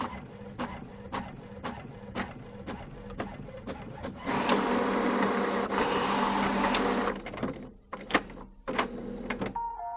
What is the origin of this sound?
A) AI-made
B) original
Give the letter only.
B